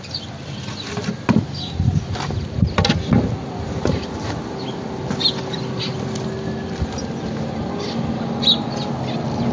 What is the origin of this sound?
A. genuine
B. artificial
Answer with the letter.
A